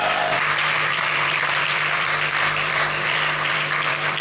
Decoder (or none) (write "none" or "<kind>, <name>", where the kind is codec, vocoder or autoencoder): vocoder, BigVGAN v2